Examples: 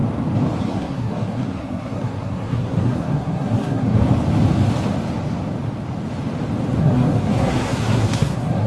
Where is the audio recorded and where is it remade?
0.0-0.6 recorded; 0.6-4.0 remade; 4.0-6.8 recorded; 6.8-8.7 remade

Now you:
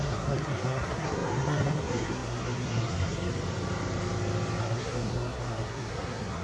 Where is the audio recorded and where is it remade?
0.0-3.3 remade; 3.3-4.6 recorded; 4.6-6.4 remade

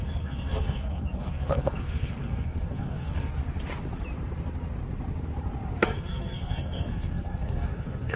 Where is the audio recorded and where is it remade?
0.0-3.4 remade; 3.4-5.8 recorded; 5.8-8.2 remade

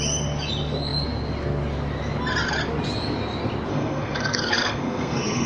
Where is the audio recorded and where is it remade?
0.0-3.7 recorded; 3.7-5.5 remade

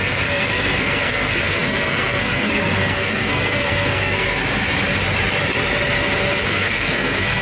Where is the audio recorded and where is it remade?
0.0-4.4 remade; 4.4-6.4 recorded; 6.4-7.4 remade

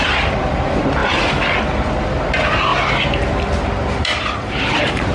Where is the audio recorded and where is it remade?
0.0-5.1 recorded

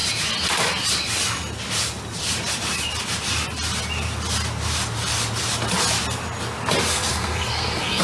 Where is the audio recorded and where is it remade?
0.0-6.9 recorded; 6.9-8.0 remade

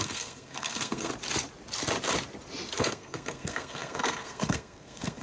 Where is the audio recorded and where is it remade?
0.0-1.1 remade; 1.1-2.8 recorded; 2.8-5.2 remade